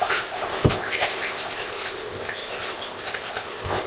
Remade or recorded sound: remade